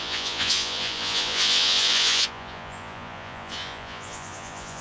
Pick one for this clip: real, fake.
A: fake